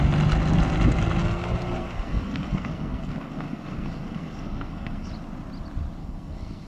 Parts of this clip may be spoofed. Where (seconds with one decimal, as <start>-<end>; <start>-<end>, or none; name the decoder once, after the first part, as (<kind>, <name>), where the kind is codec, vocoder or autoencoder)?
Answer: 1.2-5.1 (codec, SNAC); 6.0-6.7